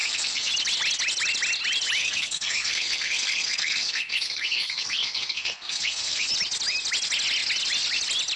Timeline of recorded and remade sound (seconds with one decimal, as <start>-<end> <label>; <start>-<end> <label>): 0.0-0.5 remade; 0.5-2.0 recorded; 2.0-6.3 remade; 6.3-8.4 recorded